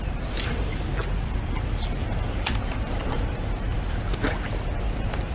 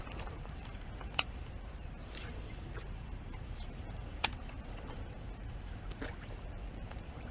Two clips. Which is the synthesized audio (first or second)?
second